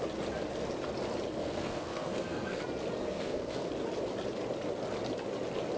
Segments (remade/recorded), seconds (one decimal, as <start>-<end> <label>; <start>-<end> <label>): 0.0-1.4 recorded; 1.4-2.6 remade; 2.6-3.0 recorded; 3.0-3.7 remade; 3.7-5.8 recorded